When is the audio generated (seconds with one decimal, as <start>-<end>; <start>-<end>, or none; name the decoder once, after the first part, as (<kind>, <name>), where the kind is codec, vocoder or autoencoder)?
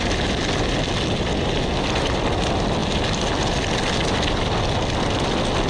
none